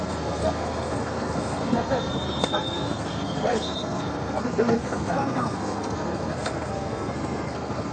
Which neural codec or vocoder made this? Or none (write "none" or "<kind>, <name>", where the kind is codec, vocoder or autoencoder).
codec, SNAC